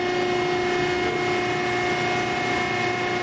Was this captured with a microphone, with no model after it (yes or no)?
yes